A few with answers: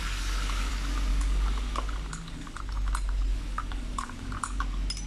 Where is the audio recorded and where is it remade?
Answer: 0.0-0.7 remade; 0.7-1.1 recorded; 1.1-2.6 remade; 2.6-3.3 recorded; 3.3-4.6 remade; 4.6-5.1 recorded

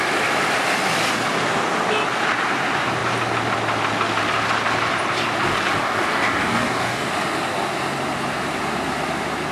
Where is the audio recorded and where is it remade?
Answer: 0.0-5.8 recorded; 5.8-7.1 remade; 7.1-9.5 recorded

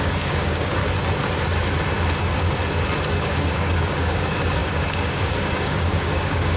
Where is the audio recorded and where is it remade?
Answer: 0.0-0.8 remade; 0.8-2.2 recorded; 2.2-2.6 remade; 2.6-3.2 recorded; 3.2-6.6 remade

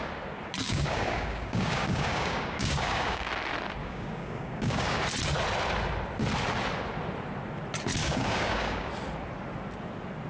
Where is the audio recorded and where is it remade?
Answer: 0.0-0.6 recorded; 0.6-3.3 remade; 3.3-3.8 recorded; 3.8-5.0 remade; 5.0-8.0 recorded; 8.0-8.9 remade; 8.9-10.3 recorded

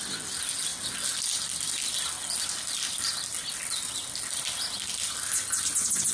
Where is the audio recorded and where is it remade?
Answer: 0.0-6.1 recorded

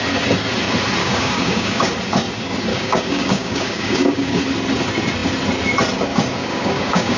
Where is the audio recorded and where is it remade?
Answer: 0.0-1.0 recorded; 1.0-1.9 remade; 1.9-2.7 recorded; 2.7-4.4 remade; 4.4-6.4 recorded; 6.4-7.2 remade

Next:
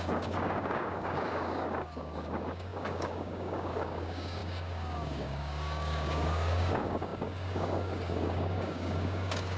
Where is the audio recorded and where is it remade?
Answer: 0.0-9.6 remade

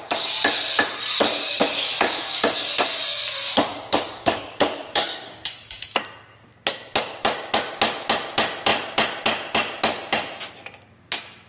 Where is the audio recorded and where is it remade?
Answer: 0.0-1.3 recorded; 1.3-3.3 remade; 3.3-3.7 recorded; 3.7-6.0 remade; 6.0-11.5 recorded